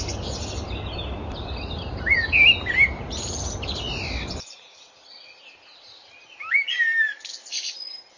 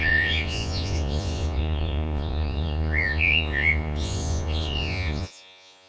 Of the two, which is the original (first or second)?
first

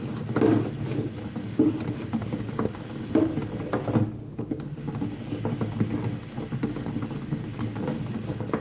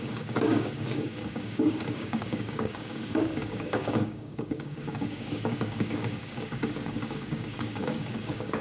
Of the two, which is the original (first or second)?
first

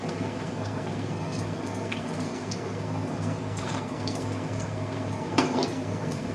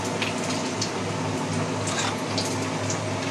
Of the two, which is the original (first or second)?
second